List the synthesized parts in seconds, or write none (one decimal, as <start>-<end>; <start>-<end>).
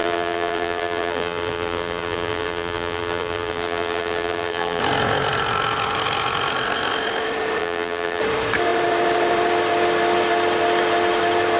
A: 0.0-4.8; 7.6-8.2